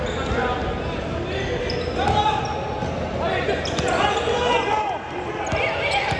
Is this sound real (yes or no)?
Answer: yes